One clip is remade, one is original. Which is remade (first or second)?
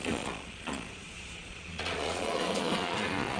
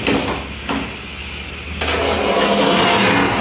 first